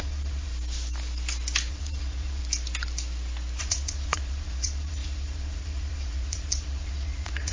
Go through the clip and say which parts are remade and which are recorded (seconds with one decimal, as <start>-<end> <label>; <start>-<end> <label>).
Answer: 0.0-0.5 remade; 0.5-1.7 recorded; 1.7-2.4 remade; 2.4-3.6 recorded; 3.6-7.5 remade